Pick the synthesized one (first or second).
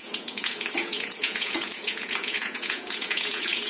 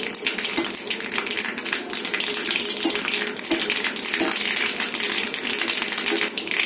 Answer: first